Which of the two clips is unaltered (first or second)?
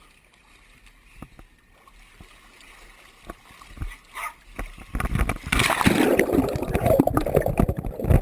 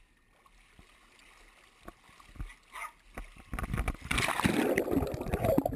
second